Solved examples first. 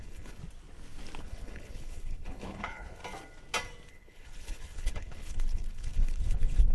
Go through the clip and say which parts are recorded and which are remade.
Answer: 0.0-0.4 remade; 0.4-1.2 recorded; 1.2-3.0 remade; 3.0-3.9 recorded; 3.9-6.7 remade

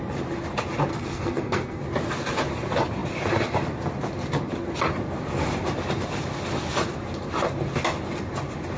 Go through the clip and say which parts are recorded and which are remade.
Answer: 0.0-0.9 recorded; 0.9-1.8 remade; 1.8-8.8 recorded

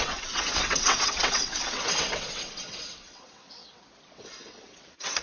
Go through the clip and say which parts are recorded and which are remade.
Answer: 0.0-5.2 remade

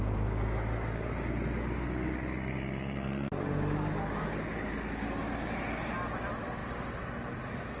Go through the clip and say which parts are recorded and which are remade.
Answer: 0.0-7.8 recorded

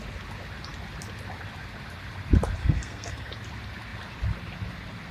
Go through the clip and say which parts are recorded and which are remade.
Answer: 0.0-2.6 recorded; 2.6-3.3 remade; 3.3-5.1 recorded